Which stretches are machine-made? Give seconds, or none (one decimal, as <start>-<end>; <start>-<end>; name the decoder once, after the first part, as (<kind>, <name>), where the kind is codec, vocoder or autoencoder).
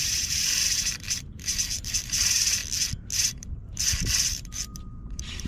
0.0-2.6 (vocoder, BigVGAN v2); 3.3-5.5